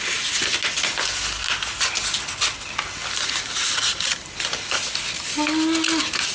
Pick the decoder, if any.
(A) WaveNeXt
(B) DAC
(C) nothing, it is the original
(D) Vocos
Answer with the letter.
C